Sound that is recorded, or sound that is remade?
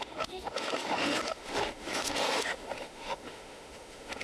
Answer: remade